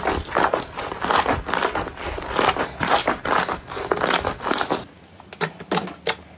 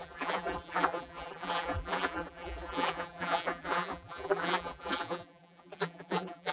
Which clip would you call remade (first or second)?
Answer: second